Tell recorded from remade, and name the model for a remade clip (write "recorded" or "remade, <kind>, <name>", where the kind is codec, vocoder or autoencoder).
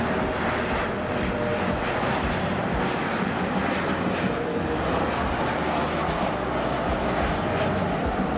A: recorded